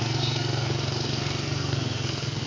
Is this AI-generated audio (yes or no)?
yes